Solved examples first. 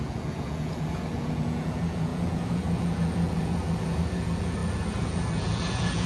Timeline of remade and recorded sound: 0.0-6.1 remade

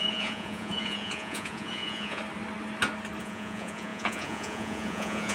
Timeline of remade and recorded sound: 0.0-2.2 remade; 2.2-3.2 recorded; 3.2-5.3 remade

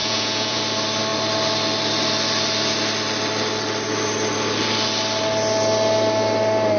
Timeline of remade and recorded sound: 0.0-0.6 remade; 0.6-6.8 recorded

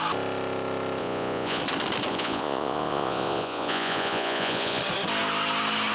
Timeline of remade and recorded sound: 0.0-1.0 recorded; 1.0-1.6 remade; 1.6-2.1 recorded; 2.1-4.8 remade; 4.8-5.9 recorded

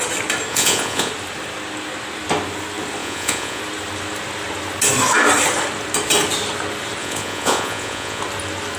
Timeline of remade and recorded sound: 0.0-0.5 recorded; 0.5-1.1 remade; 1.1-3.0 recorded; 3.0-3.6 remade; 3.6-7.0 recorded; 7.0-8.2 remade; 8.2-8.8 recorded

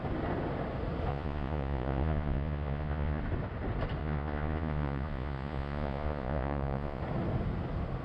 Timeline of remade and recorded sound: 0.0-1.1 recorded; 1.1-3.2 remade; 3.2-4.0 recorded; 4.0-7.0 remade; 7.0-8.0 recorded

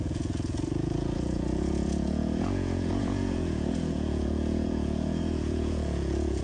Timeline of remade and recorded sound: 0.0-6.4 remade